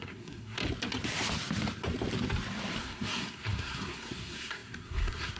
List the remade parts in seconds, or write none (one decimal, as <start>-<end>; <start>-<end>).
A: 0.0-0.6; 2.8-5.4